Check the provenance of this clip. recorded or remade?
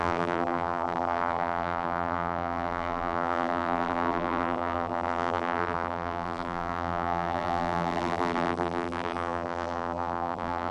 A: remade